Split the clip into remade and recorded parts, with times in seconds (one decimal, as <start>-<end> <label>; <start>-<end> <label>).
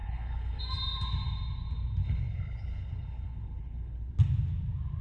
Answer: 0.0-0.6 remade; 0.6-2.0 recorded; 2.0-4.1 remade; 4.1-5.0 recorded